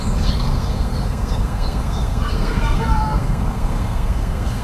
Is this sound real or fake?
fake